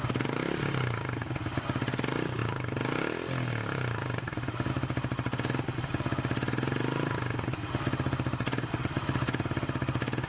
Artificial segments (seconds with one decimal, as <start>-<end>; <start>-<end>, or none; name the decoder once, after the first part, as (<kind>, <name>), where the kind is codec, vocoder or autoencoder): none

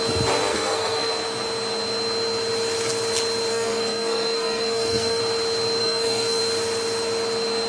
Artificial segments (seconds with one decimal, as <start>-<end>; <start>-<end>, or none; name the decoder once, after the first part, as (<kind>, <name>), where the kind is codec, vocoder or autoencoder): 0.5-1.1 (codec, SNAC); 3.5-5.2; 5.8-6.4

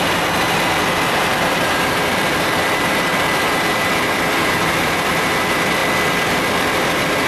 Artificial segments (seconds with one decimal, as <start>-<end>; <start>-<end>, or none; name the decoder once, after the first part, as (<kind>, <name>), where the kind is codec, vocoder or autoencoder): 1.3-5.1 (vocoder, BigVGAN v2)

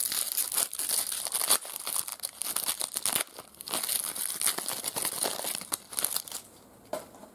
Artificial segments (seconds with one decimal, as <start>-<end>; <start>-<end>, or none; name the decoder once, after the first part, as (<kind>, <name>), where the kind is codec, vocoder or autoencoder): none

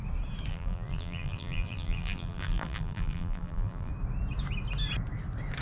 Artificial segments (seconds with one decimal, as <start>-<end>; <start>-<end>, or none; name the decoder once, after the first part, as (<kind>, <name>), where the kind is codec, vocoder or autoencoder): 0.5-3.9 (vocoder, BigVGAN v2)

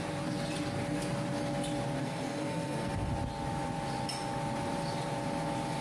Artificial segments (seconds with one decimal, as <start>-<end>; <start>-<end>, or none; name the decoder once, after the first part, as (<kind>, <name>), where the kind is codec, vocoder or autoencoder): 2.0-3.1 (codec, SNAC)

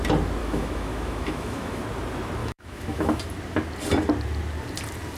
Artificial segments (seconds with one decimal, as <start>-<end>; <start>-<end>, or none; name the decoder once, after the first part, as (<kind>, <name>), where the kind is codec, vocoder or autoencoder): 0.4-1.8 (autoencoder, DAC-VAE); 2.4-3.2

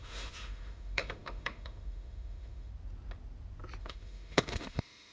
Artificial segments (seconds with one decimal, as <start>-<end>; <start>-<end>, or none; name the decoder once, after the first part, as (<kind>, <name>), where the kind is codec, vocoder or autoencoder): 0.0-2.7 (autoencoder, DAC-VAE); 3.8-5.1